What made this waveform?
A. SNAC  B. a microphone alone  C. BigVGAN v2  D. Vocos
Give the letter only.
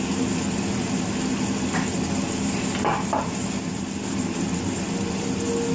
B